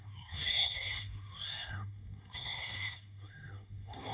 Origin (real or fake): fake